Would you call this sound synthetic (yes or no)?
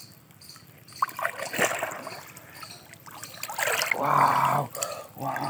no